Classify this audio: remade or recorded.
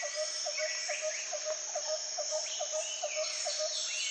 recorded